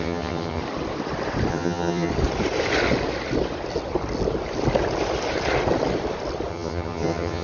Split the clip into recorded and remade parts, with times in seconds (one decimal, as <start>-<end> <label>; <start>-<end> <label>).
0.0-0.6 remade; 0.6-1.5 recorded; 1.5-2.1 remade; 2.1-6.5 recorded; 6.5-7.4 remade